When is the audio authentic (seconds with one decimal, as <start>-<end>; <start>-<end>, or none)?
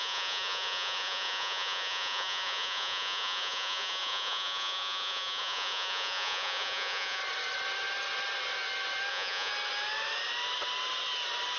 7.2-9.1; 9.5-11.6